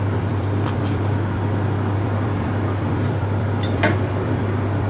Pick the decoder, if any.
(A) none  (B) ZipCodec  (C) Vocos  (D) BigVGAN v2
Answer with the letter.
D